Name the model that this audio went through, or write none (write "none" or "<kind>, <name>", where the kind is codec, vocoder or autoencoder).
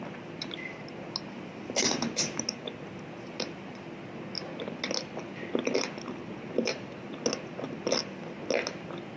none